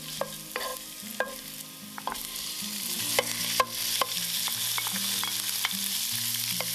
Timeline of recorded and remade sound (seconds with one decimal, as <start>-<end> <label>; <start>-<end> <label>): 0.0-6.7 recorded